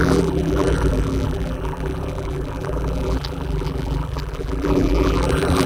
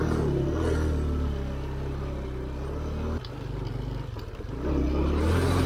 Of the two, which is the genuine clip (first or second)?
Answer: second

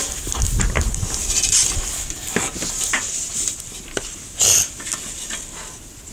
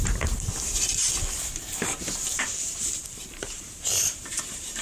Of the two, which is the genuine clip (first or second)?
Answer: first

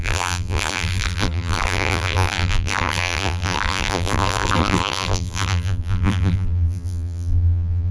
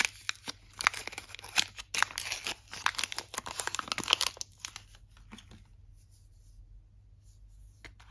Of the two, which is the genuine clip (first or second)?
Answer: second